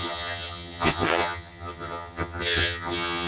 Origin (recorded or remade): remade